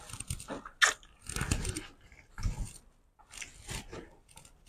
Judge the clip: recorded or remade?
recorded